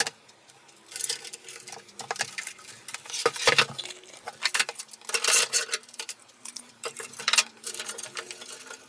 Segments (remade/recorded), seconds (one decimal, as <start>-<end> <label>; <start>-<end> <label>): 0.0-6.2 recorded; 6.2-8.3 remade; 8.3-8.9 recorded